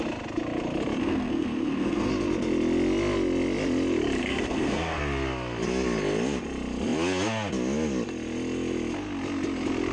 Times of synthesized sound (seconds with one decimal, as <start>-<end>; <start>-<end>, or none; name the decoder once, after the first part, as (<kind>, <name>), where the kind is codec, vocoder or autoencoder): 1.0-2.1 (codec, SNAC); 4.2-5.0